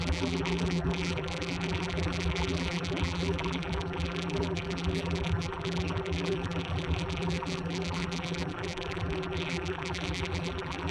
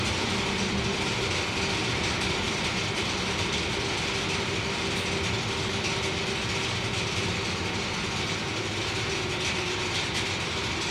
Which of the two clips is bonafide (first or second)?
second